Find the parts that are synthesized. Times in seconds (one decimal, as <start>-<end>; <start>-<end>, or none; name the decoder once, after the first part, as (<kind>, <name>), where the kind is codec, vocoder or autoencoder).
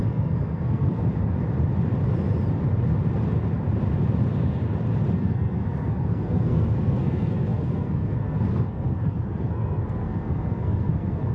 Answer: 0.0-1.0 (codec, SNAC); 5.2-11.3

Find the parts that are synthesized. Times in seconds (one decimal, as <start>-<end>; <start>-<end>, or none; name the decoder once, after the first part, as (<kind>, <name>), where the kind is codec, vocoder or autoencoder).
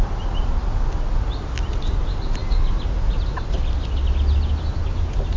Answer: 0.0-2.4 (vocoder, BigVGAN v2)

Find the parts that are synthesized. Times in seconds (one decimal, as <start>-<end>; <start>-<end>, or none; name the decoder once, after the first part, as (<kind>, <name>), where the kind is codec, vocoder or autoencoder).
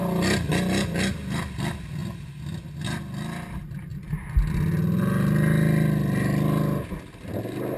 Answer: none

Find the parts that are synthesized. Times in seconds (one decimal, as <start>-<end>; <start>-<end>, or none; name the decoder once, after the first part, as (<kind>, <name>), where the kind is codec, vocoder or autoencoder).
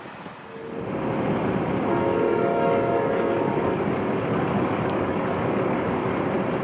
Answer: 2.1-6.1 (codec, DAC)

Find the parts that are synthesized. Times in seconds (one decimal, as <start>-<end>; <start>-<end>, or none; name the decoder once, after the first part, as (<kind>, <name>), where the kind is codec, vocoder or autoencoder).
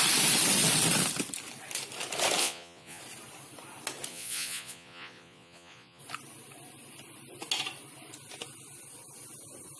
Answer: 2.4-3.0 (vocoder, Vocos); 4.1-6.0